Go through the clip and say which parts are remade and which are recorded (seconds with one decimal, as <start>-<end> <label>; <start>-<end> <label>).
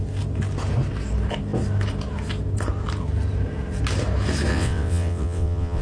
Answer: 0.0-4.5 recorded; 4.5-5.8 remade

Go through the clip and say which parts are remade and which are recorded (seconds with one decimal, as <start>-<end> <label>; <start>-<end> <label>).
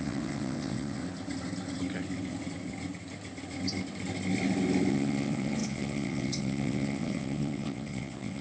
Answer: 0.0-1.0 remade; 1.0-4.9 recorded; 4.9-8.4 remade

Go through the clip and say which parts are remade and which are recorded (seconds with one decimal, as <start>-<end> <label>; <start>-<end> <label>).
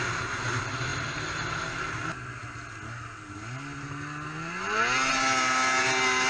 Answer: 0.0-6.3 recorded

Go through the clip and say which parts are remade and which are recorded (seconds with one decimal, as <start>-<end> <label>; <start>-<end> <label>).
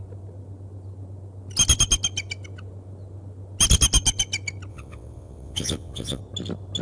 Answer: 0.0-4.7 recorded; 4.7-6.2 remade; 6.2-6.8 recorded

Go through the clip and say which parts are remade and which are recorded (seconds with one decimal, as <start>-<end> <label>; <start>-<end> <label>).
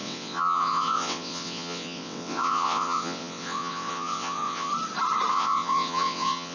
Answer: 0.0-4.7 remade; 4.7-5.3 recorded; 5.3-6.5 remade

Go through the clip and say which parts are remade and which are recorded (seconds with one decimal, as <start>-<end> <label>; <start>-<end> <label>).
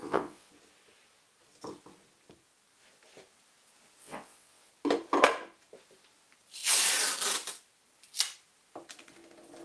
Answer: 0.0-0.5 remade; 0.5-4.0 recorded; 4.0-4.7 remade; 4.7-9.6 recorded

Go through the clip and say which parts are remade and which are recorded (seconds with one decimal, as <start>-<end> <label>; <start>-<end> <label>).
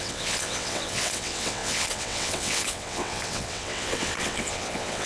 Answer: 0.0-5.1 remade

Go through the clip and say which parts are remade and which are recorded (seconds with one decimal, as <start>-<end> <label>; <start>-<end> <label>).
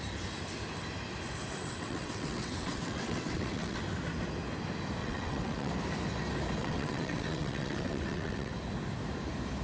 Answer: 0.0-1.6 recorded; 1.6-3.8 remade; 3.8-5.0 recorded; 5.0-5.7 remade; 5.7-6.6 recorded; 6.6-8.5 remade; 8.5-9.6 recorded